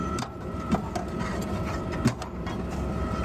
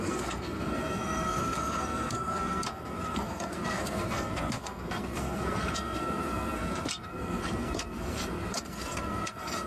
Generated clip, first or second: second